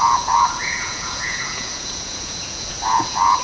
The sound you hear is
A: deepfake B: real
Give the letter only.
A